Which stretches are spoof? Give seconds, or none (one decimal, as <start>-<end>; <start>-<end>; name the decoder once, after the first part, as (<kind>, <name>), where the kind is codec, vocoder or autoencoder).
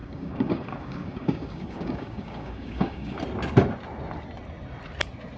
0.0-3.2 (codec, DAC)